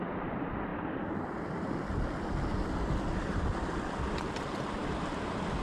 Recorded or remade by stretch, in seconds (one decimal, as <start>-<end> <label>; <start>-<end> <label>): 0.0-5.6 recorded